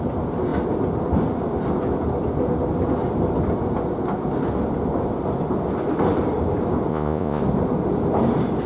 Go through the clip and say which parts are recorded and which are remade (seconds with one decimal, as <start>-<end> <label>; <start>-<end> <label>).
0.0-6.9 recorded; 6.9-7.4 remade; 7.4-8.7 recorded

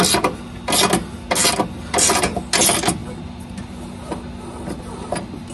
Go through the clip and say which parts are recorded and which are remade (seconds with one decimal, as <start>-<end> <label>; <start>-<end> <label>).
0.0-5.5 recorded

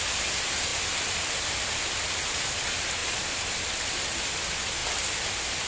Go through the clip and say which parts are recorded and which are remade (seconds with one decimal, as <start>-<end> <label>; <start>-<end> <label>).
0.0-5.7 recorded

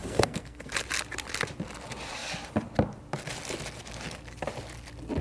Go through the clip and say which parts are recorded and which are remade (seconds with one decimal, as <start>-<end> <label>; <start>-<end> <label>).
0.0-0.7 remade; 0.7-5.2 recorded

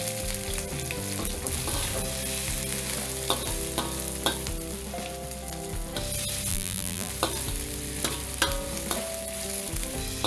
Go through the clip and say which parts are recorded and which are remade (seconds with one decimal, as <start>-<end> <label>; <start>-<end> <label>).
0.0-6.5 recorded; 6.5-7.1 remade; 7.1-10.3 recorded

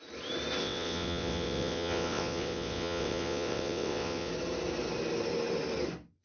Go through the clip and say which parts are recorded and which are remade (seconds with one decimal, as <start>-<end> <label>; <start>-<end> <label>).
0.0-0.6 recorded; 0.6-4.3 remade; 4.3-6.2 recorded

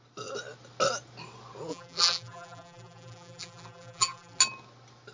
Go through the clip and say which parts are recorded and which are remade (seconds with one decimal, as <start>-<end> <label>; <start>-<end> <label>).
0.0-1.7 recorded; 1.7-4.4 remade; 4.4-5.1 recorded